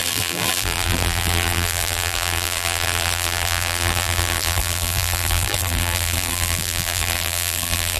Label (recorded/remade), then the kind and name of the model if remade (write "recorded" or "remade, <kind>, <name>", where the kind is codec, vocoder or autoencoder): remade, vocoder, BigVGAN v2